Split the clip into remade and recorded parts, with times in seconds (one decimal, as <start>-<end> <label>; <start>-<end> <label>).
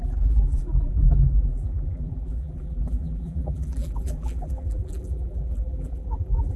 0.0-6.6 remade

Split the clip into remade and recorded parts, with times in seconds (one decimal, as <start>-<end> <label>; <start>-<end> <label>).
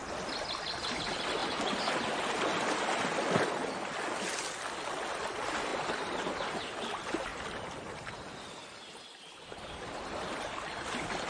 0.0-11.3 recorded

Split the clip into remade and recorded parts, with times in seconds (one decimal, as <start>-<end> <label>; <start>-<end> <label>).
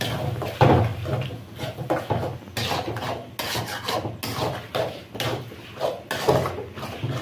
0.0-7.2 recorded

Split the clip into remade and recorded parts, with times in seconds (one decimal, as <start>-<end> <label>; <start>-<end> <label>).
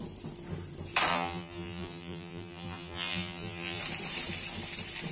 0.0-1.1 recorded; 1.1-3.8 remade; 3.8-5.1 recorded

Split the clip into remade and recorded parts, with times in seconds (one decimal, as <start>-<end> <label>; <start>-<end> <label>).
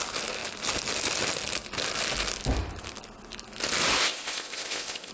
0.0-4.0 recorded; 4.0-5.1 remade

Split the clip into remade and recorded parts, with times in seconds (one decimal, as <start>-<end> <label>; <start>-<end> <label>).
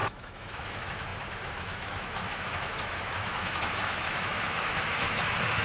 0.0-5.6 remade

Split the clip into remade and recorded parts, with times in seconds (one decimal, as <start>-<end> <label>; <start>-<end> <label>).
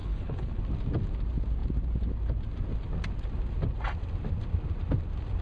0.0-0.6 remade; 0.6-5.4 recorded